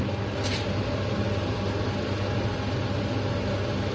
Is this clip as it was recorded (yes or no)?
yes